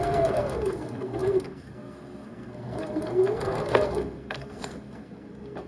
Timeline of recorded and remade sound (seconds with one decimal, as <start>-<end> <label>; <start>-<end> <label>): 0.0-5.7 remade